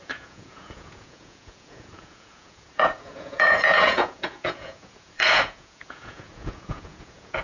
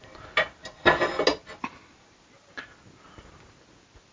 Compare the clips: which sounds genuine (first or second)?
second